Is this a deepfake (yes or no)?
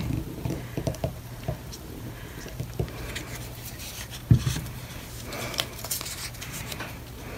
yes